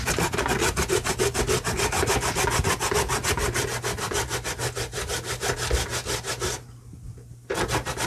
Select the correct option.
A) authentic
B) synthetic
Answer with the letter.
A